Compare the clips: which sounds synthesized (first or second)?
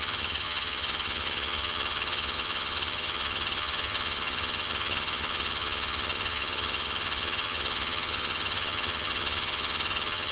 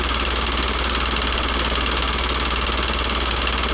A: first